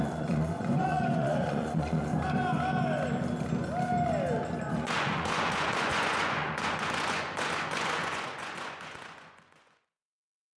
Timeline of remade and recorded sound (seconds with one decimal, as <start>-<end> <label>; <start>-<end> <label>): 0.0-2.1 remade; 2.1-4.7 recorded; 4.7-10.6 remade